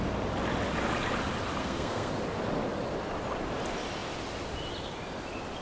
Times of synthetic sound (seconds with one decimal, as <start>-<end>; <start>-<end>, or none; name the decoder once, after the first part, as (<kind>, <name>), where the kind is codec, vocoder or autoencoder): 1.6-2.1 (codec, SNAC)